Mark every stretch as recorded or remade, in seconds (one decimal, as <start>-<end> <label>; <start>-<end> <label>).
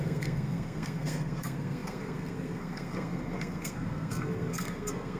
0.0-5.2 remade